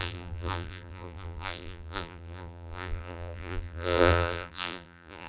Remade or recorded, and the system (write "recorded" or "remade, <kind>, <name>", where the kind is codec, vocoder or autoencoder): remade, vocoder, BigVGAN v2